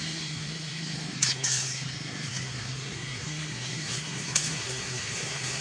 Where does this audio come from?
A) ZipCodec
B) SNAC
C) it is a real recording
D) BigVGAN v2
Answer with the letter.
B